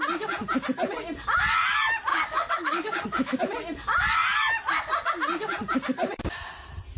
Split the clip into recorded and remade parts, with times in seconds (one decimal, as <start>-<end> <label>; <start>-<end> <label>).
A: 0.0-2.1 recorded; 2.1-3.4 remade; 3.4-7.0 recorded